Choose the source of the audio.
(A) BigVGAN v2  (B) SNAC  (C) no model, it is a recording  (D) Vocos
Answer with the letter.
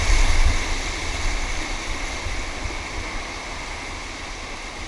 C